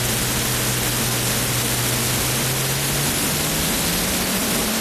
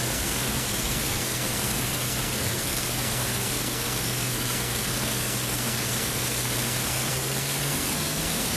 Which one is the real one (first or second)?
first